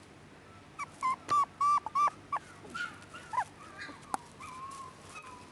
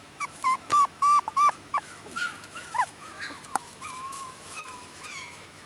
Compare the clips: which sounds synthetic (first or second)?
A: second